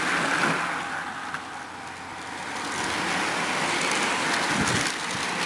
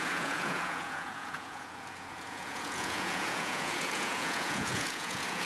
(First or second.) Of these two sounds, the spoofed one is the second